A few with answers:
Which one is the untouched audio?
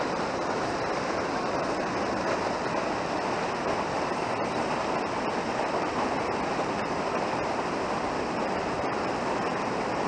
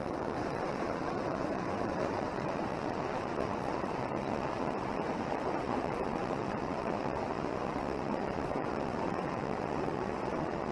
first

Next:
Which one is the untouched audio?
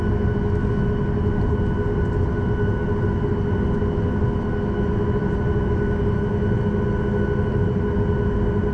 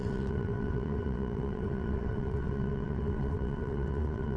first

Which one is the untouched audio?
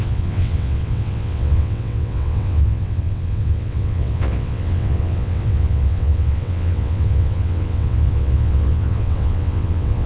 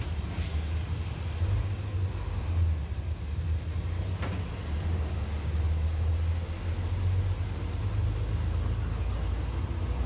second